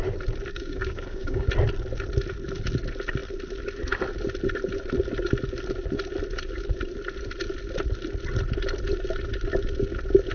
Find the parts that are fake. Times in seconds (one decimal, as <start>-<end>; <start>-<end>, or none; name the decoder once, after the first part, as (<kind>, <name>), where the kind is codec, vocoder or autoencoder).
0.5-1.5 (codec, DAC)